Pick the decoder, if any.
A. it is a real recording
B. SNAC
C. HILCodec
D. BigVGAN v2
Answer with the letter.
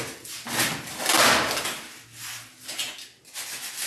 A